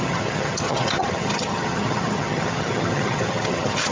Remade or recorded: remade